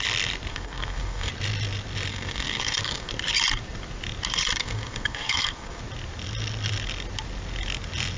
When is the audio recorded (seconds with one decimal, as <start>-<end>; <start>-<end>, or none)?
0.0-0.5; 1.3-2.1; 3.1-4.6; 5.8-8.2